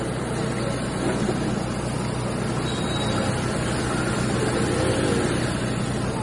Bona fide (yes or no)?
yes